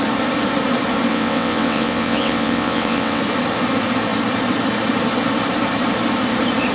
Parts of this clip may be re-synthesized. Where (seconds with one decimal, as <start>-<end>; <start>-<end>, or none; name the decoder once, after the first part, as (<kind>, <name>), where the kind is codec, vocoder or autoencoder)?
1.1-3.2 (vocoder, WaveNeXt)